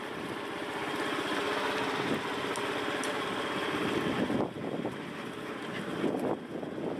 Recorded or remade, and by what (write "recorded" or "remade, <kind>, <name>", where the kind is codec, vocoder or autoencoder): recorded